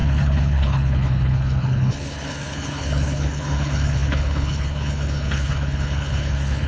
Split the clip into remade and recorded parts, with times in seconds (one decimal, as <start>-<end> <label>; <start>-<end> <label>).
0.0-6.7 remade